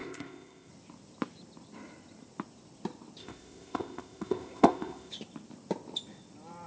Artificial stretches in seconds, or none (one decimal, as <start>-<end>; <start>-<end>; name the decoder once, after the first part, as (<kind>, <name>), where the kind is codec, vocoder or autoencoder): 0.0-0.7 (codec, ZipCodec); 3.2-5.1